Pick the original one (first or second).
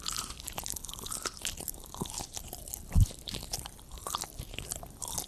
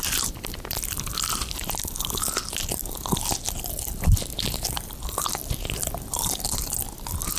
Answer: second